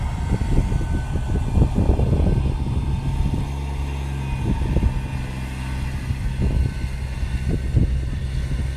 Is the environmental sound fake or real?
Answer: real